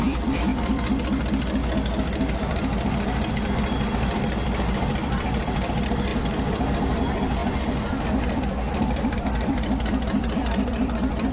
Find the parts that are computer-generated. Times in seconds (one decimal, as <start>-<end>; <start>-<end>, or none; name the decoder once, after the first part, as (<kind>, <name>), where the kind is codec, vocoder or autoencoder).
0.0-0.5 (vocoder, BigVGAN v2); 3.3-11.3